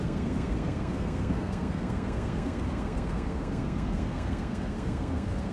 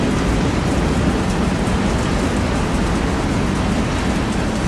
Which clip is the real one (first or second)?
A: second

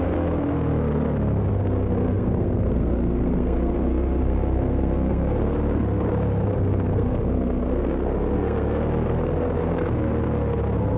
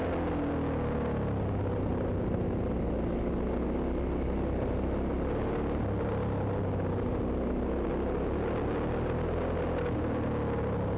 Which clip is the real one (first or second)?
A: second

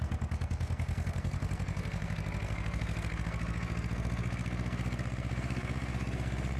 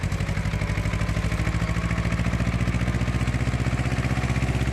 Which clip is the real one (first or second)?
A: second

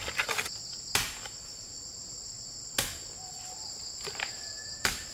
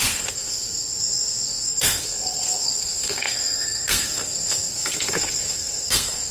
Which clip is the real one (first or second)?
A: first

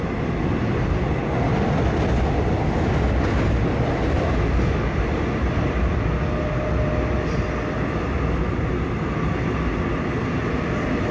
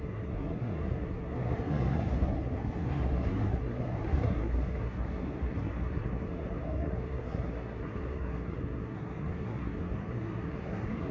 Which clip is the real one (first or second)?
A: first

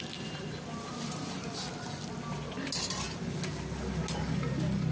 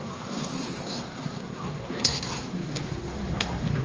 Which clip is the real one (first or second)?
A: first